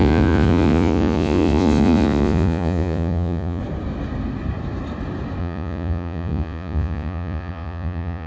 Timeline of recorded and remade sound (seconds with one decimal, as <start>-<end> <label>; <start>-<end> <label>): 0.0-3.6 remade; 3.6-5.4 recorded; 5.4-8.3 remade